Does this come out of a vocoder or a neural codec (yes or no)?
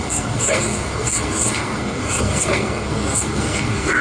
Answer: yes